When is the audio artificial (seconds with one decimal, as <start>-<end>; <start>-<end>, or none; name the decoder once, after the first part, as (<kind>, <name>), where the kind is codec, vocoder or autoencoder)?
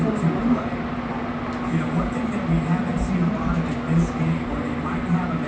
0.4-1.1 (vocoder, BigVGAN v2)